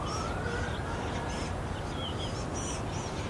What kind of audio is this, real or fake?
real